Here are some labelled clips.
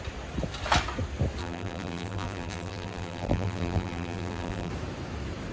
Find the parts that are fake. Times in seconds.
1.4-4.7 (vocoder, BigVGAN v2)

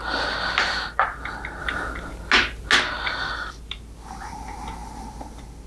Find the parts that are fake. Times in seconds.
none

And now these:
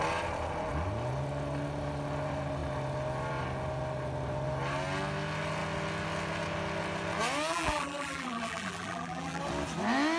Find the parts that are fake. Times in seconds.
7.5-9.4 (vocoder, BigVGAN v2)